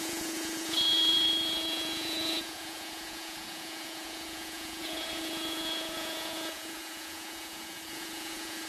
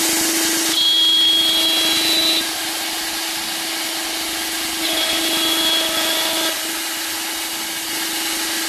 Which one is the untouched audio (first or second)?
second